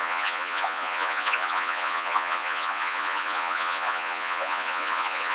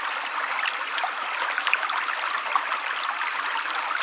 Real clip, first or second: second